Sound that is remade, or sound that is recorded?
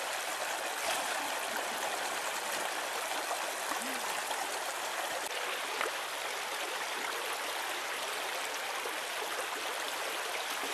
recorded